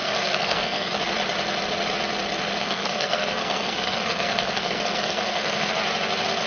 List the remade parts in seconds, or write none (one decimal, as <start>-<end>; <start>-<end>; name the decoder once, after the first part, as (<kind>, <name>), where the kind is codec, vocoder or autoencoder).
0.0-1.0 (codec, SNAC); 2.6-5.7